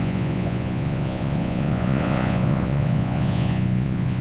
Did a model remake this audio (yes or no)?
yes